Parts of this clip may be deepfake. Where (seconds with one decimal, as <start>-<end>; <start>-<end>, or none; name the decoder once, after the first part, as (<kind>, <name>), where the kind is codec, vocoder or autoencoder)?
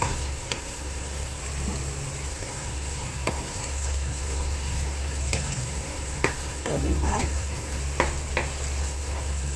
0.0-1.4 (codec, SNAC); 2.3-7.8; 8.8-9.6